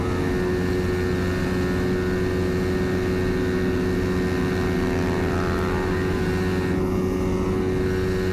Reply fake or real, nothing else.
real